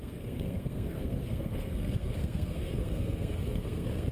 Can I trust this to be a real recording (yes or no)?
no